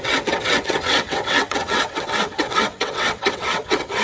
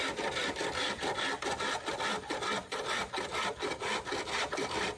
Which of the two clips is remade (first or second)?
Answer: first